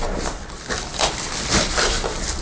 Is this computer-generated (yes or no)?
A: yes